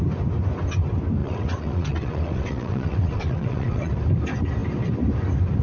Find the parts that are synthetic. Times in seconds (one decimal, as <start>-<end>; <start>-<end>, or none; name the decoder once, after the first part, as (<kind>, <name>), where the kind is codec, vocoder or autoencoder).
1.2-3.9 (vocoder, WaveNeXt)